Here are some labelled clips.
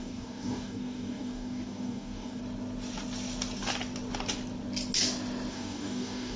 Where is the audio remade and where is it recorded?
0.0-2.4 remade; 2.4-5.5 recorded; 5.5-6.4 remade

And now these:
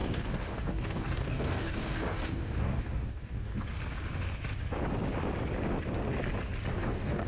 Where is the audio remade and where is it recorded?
0.0-3.5 remade; 3.5-6.7 recorded; 6.7-7.3 remade

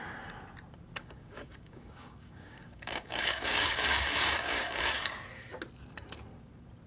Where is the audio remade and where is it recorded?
0.0-1.0 recorded; 1.0-5.1 remade; 5.1-6.9 recorded

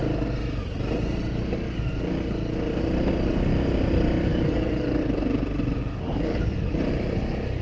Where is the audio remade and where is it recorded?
0.0-4.3 recorded; 4.3-5.0 remade; 5.0-5.8 recorded; 5.8-6.4 remade; 6.4-7.6 recorded